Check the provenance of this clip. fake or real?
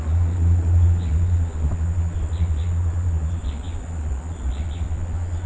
fake